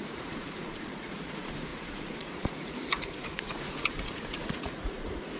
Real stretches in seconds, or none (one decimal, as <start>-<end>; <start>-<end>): none